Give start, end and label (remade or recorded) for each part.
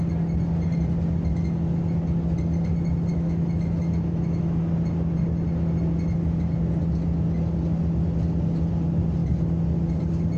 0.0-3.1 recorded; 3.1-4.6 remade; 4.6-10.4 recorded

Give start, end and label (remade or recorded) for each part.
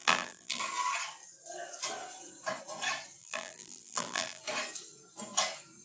0.0-0.6 remade; 0.6-3.2 recorded; 3.2-4.4 remade; 4.4-5.8 recorded